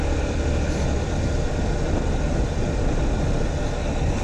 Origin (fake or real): real